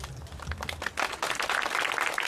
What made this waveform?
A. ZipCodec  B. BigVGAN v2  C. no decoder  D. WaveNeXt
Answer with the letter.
C